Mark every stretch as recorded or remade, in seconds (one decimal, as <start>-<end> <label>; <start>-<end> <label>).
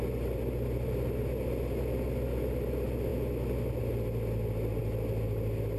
0.0-5.8 recorded